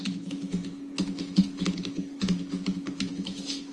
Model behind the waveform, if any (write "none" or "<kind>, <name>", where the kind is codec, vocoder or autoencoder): autoencoder, DAC-VAE